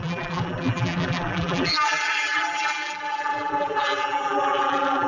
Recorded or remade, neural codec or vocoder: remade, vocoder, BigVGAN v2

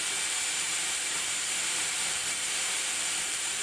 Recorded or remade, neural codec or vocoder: remade, vocoder, BigVGAN v2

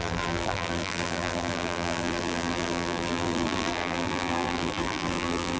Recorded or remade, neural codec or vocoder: remade, vocoder, BigVGAN v2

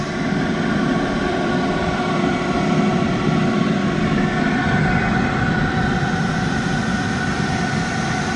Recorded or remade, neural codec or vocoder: remade, vocoder, BigVGAN v2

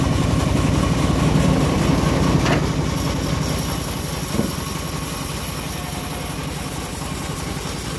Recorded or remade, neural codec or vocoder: recorded